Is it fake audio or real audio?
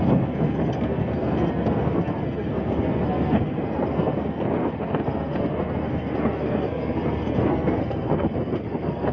fake